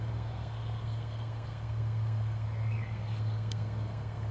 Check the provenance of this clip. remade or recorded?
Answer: remade